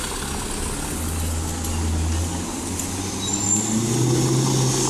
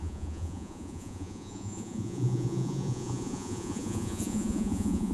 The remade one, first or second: second